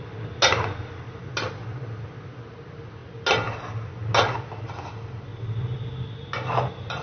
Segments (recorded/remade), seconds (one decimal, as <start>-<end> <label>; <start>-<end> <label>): 0.0-7.0 recorded